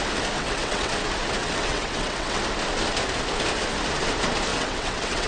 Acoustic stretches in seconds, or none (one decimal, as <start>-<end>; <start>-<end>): 0.0-0.4; 0.9-1.4; 2.4-4.5